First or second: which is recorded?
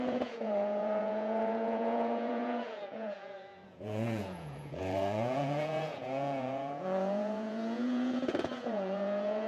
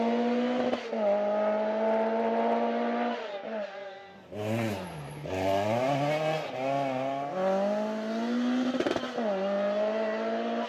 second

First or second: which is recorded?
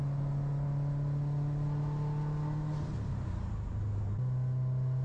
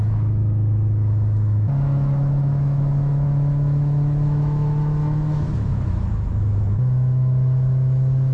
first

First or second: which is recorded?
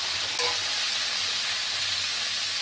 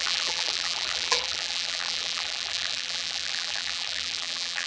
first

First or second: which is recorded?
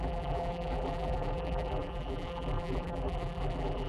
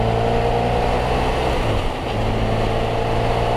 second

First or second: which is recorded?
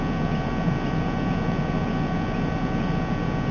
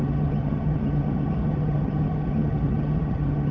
first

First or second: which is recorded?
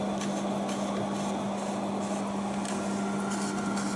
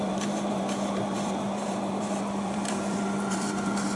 first